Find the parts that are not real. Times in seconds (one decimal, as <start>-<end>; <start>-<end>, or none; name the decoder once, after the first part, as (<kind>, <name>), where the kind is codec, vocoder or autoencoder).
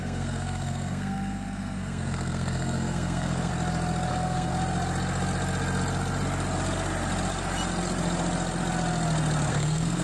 0.0-3.5 (codec, SNAC); 4.1-4.5; 9.5-10.0